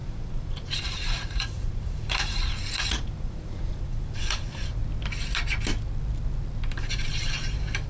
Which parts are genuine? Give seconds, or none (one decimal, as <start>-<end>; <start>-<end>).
4.8-7.9